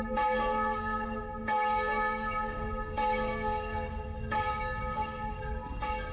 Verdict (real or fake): fake